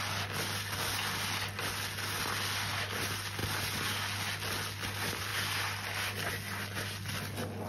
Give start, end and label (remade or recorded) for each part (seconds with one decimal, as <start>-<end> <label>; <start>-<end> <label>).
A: 0.0-7.7 recorded